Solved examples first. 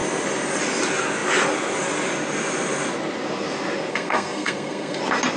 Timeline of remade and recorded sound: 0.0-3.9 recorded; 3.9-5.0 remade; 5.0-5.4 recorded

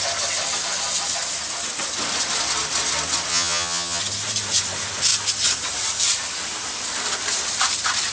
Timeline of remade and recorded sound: 0.0-3.3 recorded; 3.3-4.0 remade; 4.0-8.1 recorded

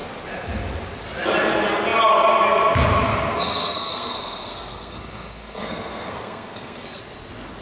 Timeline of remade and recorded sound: 0.0-3.1 recorded; 3.1-7.0 remade; 7.0-7.6 recorded

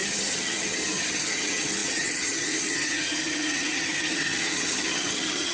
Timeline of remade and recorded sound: 0.0-5.5 remade

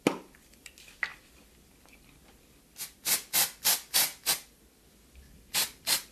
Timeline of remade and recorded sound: 0.0-6.1 recorded